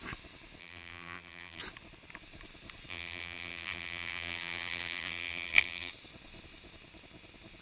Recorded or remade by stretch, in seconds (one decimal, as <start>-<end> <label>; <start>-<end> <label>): 0.0-0.6 recorded; 0.6-1.6 remade; 1.6-2.9 recorded; 2.9-5.9 remade; 5.9-7.6 recorded